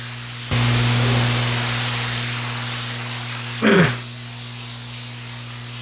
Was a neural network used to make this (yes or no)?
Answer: no